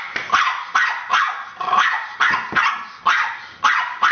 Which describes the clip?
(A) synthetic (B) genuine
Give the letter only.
B